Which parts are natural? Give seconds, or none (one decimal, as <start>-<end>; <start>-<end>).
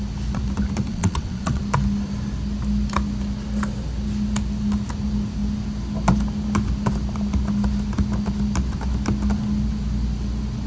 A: 0.0-0.9; 1.6-10.7